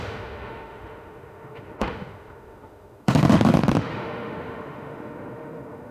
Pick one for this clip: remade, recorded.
remade